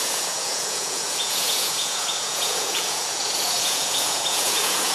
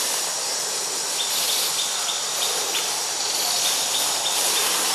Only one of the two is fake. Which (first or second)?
first